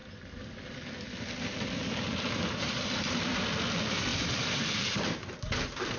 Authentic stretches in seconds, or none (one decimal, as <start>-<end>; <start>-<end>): 3.6-4.1; 5.0-6.0